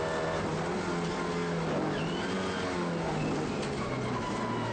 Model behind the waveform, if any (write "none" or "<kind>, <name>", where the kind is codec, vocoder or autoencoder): none